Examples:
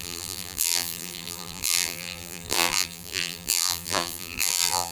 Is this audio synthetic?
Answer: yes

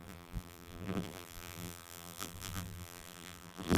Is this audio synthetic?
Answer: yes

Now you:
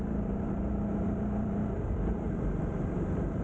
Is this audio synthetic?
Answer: yes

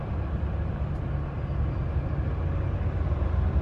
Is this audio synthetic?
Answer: no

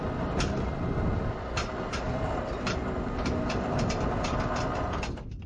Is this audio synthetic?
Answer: no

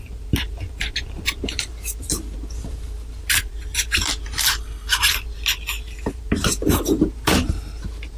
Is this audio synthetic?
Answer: yes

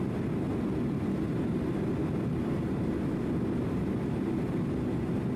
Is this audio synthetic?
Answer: no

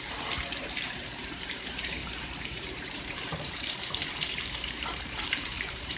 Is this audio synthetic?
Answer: yes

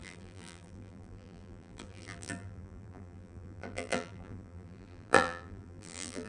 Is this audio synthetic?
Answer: yes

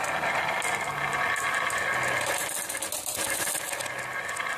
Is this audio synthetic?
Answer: no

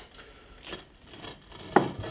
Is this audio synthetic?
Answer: no